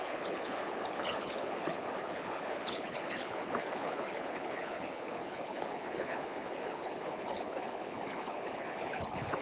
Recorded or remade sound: remade